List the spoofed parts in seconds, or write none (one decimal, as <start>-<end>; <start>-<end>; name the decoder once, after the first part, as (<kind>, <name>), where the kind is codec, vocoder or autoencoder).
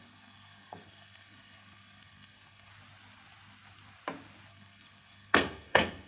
0.0-2.7 (codec, SNAC); 4.5-6.1